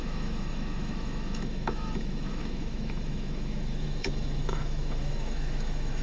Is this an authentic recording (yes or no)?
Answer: no